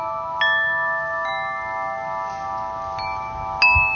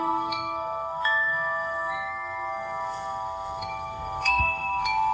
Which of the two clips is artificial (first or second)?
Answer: second